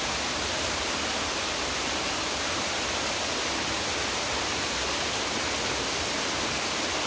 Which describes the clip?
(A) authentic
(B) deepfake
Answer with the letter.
A